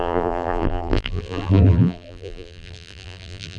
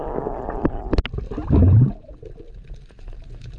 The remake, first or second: first